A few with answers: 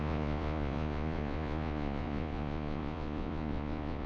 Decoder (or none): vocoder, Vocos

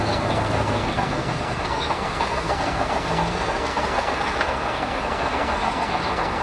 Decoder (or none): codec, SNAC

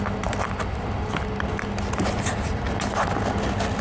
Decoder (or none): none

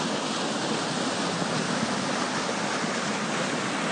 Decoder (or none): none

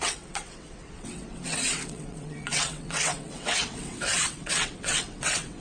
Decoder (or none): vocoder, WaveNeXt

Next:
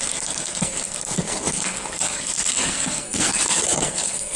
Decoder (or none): codec, SNAC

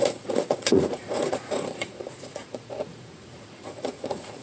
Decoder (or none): vocoder, Vocos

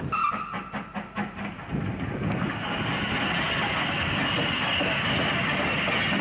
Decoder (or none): none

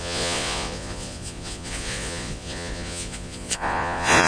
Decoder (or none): vocoder, Vocos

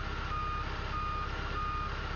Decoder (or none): none